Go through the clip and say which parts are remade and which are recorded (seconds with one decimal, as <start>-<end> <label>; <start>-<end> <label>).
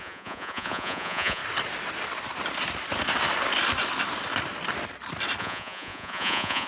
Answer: 0.0-1.4 remade; 1.4-5.4 recorded; 5.4-6.7 remade